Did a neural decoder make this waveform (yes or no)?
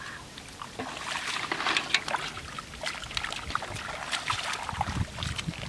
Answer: no